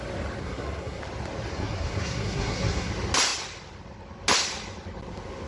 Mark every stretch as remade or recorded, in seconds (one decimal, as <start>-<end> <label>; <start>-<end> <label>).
0.0-0.4 recorded; 0.4-1.0 remade; 1.0-1.5 recorded; 1.5-2.9 remade; 2.9-5.5 recorded